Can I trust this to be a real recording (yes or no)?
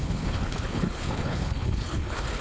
no